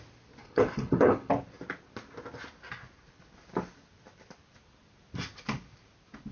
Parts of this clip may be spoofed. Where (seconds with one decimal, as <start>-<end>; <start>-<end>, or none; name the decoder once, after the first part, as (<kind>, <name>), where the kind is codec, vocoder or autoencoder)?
0.4-1.3 (codec, HILCodec)